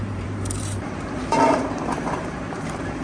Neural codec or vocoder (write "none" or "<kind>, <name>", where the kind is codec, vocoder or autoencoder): vocoder, BigVGAN v2